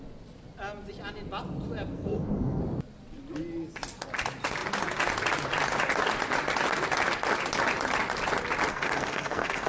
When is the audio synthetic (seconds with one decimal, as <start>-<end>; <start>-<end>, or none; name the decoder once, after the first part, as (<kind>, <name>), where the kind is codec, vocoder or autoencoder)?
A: 1.9-2.6 (codec, SNAC); 8.7-9.7

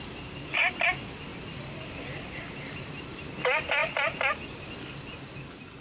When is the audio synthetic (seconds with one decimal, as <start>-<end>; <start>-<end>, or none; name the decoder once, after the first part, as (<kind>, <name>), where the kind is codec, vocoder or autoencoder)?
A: none

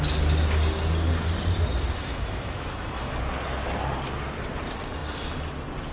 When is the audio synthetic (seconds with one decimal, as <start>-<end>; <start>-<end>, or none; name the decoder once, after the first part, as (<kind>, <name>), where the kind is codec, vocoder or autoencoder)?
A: 2.0-3.1 (autoencoder, DAC-VAE)

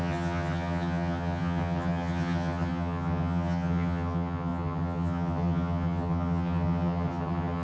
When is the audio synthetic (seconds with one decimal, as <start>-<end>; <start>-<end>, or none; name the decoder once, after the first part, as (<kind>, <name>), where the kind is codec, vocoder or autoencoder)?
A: 0.0-7.6 (vocoder, HiFi-GAN)